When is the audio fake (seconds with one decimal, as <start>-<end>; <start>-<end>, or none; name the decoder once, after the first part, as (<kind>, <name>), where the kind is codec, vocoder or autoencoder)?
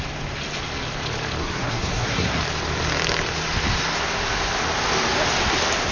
1.4-2.4 (codec, SNAC)